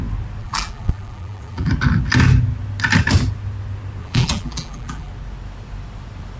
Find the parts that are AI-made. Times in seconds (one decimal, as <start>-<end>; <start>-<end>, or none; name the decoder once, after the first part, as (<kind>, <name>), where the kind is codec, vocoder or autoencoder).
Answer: 0.4-1.7 (vocoder, BigVGAN v2); 4.0-5.1